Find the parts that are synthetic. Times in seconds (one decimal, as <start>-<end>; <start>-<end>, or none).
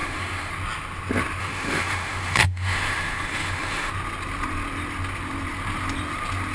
0.0-0.5; 1.4-3.9